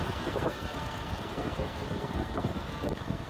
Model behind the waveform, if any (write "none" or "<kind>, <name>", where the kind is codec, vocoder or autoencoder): codec, SNAC